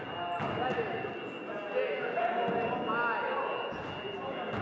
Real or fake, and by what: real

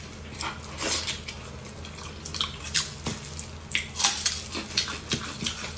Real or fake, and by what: real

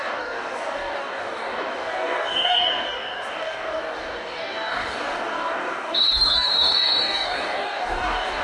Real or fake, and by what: fake, codec, DAC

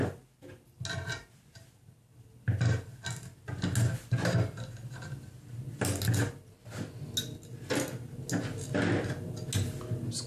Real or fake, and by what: real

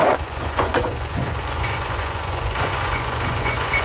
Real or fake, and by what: fake, vocoder, Vocos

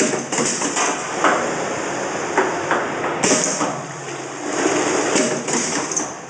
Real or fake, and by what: real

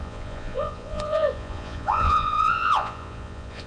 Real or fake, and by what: fake, vocoder, Vocos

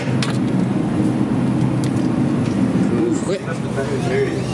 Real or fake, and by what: real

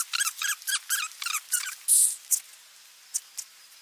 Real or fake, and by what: real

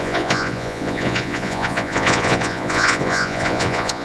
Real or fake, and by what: fake, vocoder, Vocos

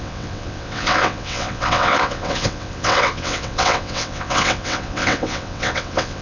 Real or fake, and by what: fake, vocoder, WaveNeXt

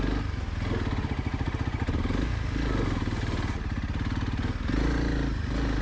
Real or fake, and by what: real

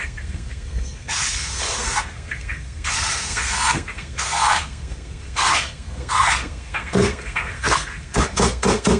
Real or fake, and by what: fake, codec, SNAC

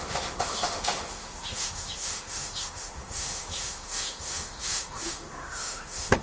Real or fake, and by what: fake, autoencoder, DAC-VAE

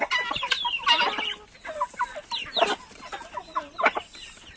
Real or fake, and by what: real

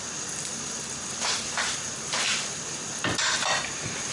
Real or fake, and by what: real